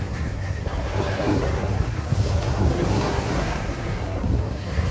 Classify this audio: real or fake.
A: fake